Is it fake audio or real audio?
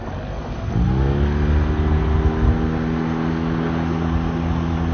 real